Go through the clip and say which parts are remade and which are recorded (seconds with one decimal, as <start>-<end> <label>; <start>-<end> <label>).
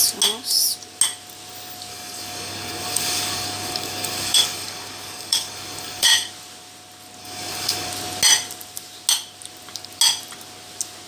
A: 0.0-1.9 recorded; 1.9-6.3 remade; 6.3-7.2 recorded; 7.2-7.9 remade; 7.9-11.1 recorded